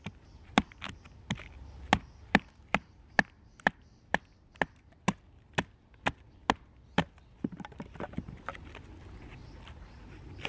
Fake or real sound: real